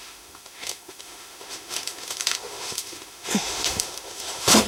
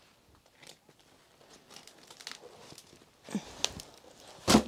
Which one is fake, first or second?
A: first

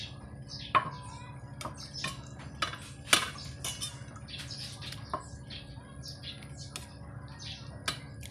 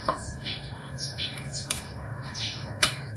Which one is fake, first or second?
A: second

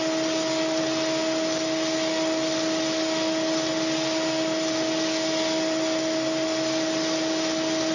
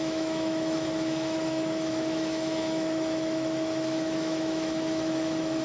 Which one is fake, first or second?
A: second